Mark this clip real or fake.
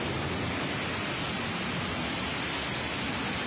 real